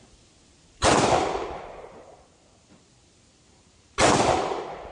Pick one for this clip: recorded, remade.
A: recorded